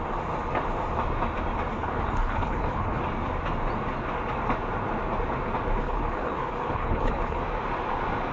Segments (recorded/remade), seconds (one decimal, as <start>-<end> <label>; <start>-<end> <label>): 0.0-1.7 recorded; 1.7-3.0 remade; 3.0-5.8 recorded; 5.8-7.4 remade; 7.4-8.3 recorded